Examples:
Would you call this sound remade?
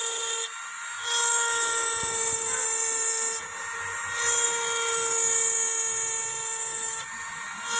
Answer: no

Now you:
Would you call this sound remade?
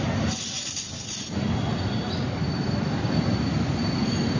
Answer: no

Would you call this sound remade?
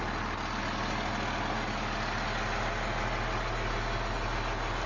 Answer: no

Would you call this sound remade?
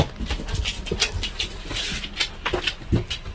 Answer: no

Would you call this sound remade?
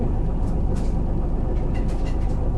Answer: no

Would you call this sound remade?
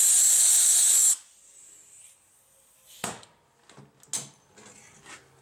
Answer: no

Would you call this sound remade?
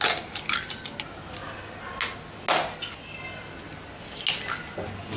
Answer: no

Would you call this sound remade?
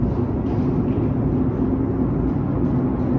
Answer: no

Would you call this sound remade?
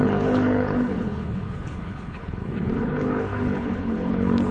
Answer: yes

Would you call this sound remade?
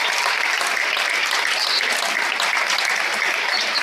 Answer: no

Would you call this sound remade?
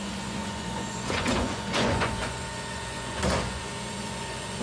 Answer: yes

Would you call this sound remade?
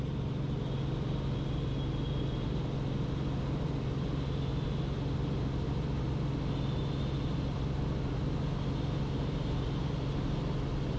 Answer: no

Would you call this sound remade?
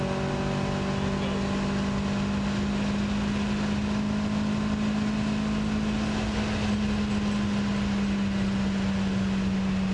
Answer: no